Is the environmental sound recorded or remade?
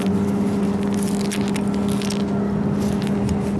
recorded